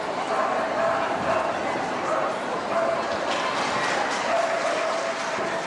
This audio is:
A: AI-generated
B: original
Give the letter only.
B